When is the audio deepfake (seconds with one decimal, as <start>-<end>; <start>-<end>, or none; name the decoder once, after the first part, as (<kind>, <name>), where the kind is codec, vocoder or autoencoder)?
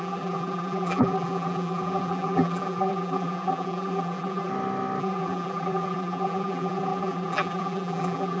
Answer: 0.0-4.5 (vocoder, BigVGAN v2); 5.0-8.4